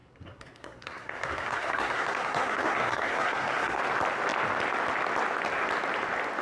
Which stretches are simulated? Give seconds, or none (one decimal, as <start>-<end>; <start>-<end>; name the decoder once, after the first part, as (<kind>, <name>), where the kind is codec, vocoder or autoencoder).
0.0-3.8 (codec, SNAC)